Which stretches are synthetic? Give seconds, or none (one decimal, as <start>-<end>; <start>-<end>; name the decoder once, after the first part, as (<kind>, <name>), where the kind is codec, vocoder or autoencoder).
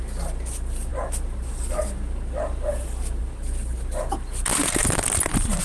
none